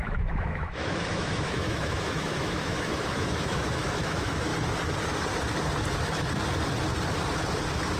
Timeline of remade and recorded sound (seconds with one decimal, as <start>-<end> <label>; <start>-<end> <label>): 0.0-4.5 remade; 4.5-8.0 recorded